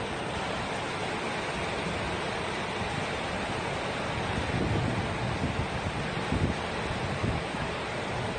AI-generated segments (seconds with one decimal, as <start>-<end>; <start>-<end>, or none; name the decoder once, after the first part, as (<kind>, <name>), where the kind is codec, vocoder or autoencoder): 7.2-7.7 (autoencoder, DAC-VAE)